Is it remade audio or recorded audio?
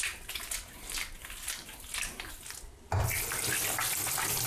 recorded